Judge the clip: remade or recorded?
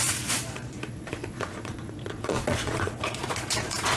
remade